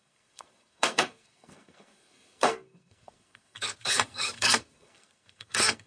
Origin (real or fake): fake